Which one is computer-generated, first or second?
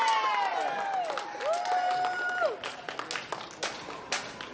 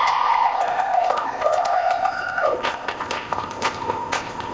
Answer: second